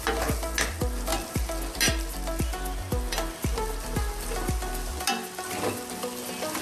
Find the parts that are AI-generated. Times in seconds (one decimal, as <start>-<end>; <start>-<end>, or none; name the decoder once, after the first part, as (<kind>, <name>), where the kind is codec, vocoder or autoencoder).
none